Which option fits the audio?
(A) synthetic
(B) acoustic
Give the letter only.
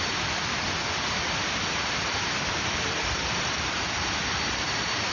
B